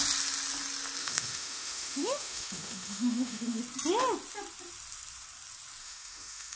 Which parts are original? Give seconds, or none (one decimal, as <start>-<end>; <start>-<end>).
0.0-1.0; 3.6-5.8